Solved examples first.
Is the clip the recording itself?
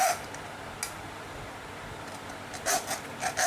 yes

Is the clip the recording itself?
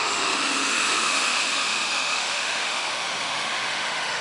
no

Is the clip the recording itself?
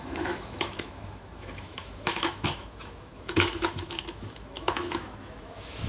no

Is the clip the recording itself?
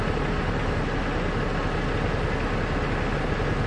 yes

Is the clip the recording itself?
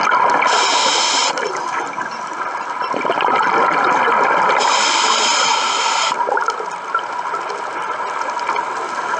yes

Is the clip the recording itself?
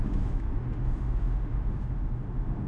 no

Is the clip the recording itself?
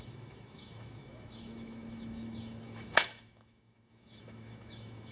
no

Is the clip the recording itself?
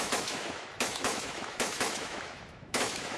no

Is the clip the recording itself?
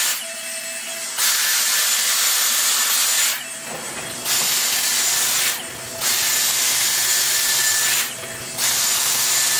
yes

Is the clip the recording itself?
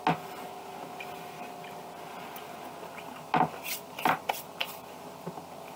yes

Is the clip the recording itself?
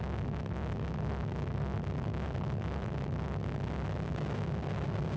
yes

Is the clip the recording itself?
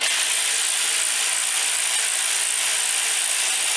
yes